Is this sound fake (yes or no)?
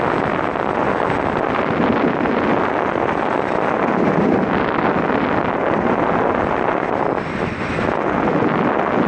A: no